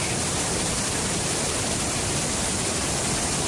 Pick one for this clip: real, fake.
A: fake